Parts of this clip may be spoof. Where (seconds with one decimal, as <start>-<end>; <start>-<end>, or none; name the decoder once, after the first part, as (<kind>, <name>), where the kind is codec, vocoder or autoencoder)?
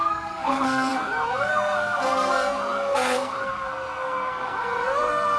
0.0-5.4 (codec, SNAC)